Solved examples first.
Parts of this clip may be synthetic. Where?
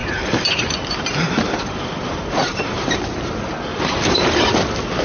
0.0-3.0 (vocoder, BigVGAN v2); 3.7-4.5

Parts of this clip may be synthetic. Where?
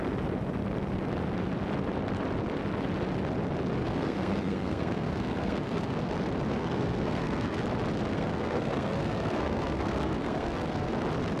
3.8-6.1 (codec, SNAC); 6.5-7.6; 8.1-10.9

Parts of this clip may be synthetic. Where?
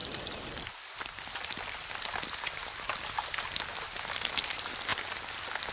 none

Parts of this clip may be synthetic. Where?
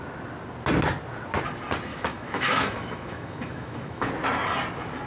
1.9-4.1 (autoencoder, DAC-VAE)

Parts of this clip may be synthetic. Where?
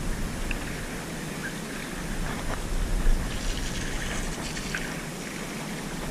none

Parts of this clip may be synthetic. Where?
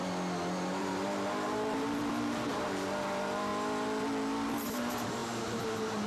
0.8-3.5 (vocoder, BigVGAN v2); 4.5-6.1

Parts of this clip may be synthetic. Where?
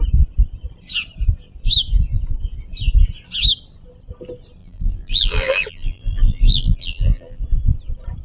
4.6-7.4 (vocoder, BigVGAN v2)